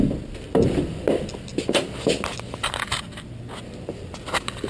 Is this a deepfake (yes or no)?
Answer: no